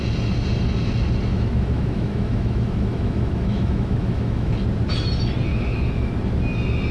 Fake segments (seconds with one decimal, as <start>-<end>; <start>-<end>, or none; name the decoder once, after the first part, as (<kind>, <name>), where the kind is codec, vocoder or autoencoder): 1.3-4.5 (autoencoder, DAC-VAE); 5.5-6.1